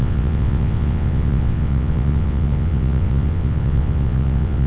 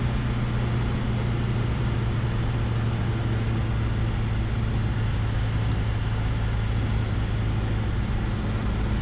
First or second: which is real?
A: second